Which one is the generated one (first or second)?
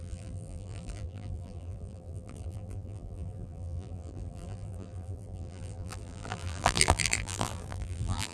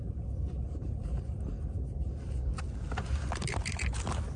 first